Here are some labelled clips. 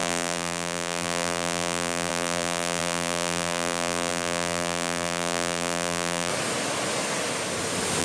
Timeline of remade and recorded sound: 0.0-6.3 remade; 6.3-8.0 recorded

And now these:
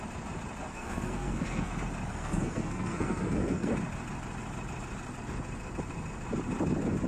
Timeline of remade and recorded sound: 0.0-0.7 recorded; 0.7-1.7 remade; 1.7-2.1 recorded; 2.1-3.7 remade; 3.7-7.1 recorded